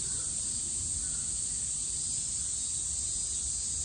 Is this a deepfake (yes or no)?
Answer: no